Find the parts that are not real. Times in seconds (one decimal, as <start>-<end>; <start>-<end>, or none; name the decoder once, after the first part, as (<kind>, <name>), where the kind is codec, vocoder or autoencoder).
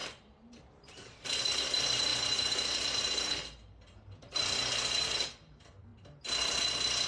0.6-5.9 (vocoder, BigVGAN v2)